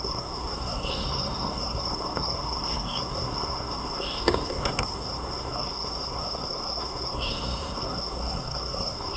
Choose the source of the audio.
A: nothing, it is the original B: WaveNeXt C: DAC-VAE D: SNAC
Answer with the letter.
D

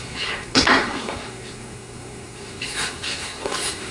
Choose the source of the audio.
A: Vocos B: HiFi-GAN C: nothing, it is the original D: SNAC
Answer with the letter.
D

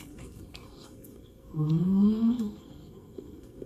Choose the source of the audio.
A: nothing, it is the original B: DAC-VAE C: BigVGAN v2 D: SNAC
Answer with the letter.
D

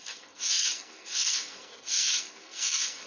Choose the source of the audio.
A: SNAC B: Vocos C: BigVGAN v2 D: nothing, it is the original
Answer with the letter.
A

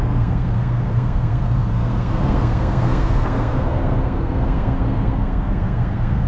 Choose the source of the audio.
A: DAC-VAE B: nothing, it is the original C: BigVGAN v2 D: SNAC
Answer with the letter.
D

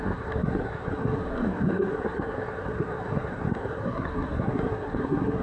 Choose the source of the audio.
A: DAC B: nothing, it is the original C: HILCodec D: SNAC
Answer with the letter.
D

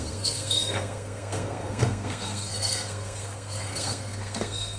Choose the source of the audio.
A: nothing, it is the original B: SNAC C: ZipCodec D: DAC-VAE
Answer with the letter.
B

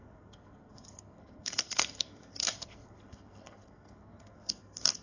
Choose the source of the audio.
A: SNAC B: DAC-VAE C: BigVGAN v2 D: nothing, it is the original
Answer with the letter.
A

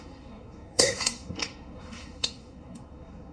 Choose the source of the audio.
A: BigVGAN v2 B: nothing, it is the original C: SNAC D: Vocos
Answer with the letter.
C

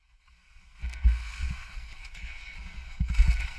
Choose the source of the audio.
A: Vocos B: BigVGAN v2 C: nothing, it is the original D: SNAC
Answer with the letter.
D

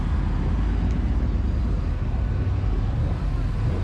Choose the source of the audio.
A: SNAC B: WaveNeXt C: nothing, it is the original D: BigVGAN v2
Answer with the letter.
C